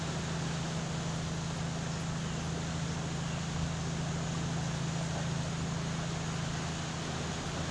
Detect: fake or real real